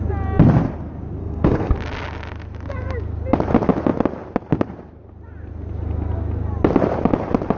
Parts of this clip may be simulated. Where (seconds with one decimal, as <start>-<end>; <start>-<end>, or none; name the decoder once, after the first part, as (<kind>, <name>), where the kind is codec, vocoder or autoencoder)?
1.2-1.7 (codec, SNAC)